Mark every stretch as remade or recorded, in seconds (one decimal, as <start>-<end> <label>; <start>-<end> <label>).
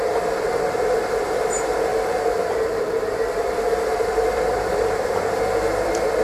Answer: 0.0-1.9 remade; 1.9-3.0 recorded; 3.0-6.2 remade